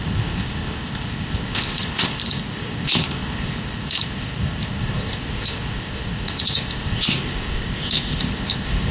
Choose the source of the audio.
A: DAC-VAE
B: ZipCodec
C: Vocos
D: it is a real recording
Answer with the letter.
B